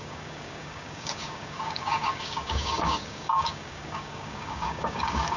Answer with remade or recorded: remade